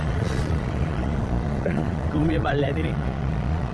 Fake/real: fake